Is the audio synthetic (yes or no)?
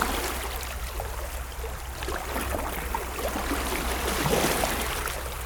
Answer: no